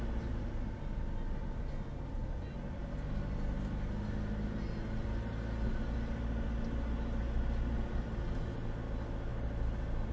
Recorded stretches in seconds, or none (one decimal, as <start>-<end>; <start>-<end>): 0.0-10.1